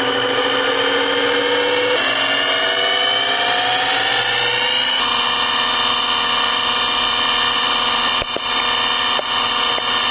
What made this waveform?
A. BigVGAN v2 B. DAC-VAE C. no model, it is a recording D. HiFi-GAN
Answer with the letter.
C